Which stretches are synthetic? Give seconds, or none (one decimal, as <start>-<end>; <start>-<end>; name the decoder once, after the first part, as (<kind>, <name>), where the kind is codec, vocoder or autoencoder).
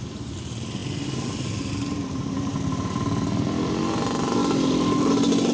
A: none